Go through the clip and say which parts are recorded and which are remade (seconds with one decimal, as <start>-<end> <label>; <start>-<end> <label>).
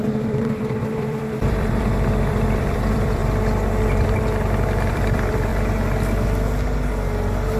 0.0-3.2 remade; 3.2-4.9 recorded; 4.9-5.5 remade; 5.5-7.6 recorded